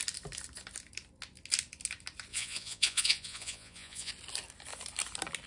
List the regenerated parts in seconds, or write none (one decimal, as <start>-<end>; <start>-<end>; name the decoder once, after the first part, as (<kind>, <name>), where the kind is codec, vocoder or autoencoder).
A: 2.3-4.1 (vocoder, Vocos)